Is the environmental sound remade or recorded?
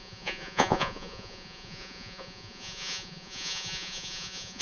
remade